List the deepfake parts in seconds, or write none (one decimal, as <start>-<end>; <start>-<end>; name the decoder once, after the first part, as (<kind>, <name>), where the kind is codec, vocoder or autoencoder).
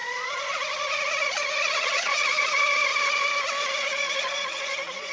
0.0-2.9 (vocoder, Vocos); 3.7-5.1